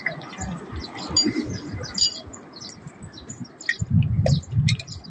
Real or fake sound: real